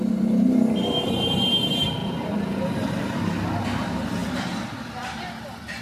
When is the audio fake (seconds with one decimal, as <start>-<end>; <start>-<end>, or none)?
2.0-3.0; 4.2-5.3